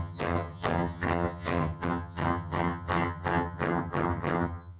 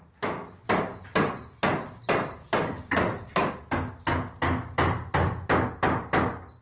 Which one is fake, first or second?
first